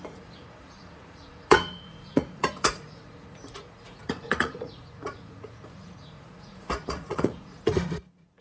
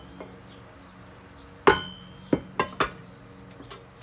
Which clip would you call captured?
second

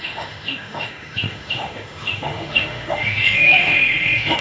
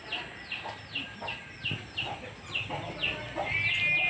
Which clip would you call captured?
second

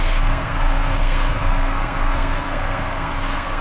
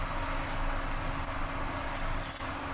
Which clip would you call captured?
second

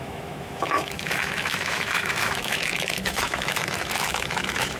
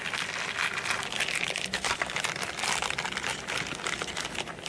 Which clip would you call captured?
second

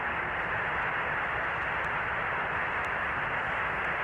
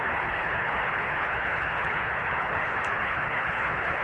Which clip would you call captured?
first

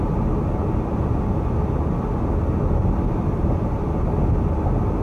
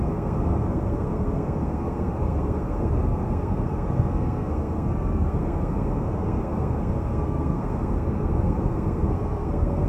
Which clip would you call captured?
first